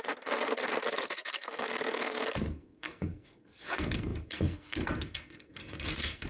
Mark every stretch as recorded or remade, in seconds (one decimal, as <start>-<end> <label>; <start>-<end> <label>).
0.0-6.3 remade